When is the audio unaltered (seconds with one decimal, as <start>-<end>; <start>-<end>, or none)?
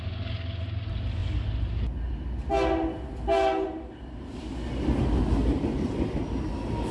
0.0-6.9